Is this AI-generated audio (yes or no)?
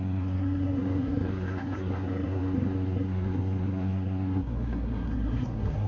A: yes